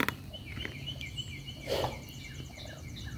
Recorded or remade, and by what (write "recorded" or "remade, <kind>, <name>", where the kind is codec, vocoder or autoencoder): recorded